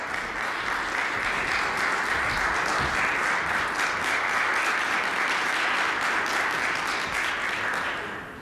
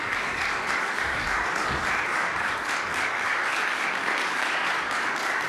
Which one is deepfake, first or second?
second